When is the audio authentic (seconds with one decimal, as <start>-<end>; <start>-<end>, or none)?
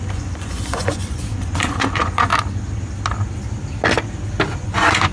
2.3-4.5